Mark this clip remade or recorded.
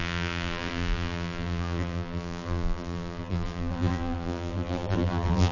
remade